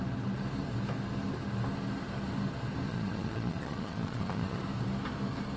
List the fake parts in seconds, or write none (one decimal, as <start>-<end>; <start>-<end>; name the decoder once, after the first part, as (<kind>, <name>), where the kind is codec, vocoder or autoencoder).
2.9-4.6 (vocoder, Vocos)